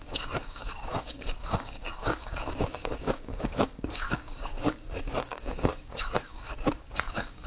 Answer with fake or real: fake